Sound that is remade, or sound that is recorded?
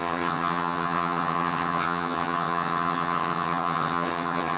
remade